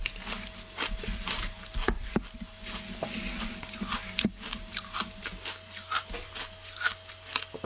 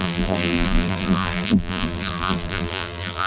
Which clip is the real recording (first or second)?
first